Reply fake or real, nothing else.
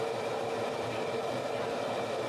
real